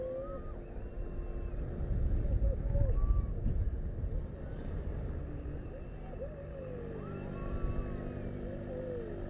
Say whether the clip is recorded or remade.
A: recorded